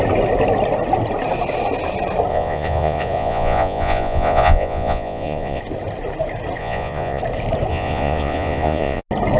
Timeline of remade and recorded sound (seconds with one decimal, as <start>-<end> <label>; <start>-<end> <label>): 0.0-2.3 recorded; 2.3-5.6 remade; 5.6-6.6 recorded; 6.6-7.2 remade; 7.2-7.7 recorded; 7.7-9.0 remade; 9.0-9.4 recorded